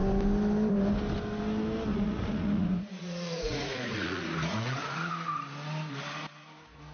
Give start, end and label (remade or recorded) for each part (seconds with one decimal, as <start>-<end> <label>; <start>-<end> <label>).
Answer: 0.0-1.9 recorded; 1.9-5.1 remade; 5.1-6.9 recorded